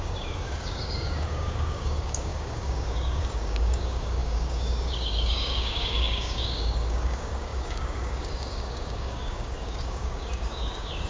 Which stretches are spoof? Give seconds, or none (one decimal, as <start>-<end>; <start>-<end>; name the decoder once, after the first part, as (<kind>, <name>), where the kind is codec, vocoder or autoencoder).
0.0-11.1 (codec, DAC)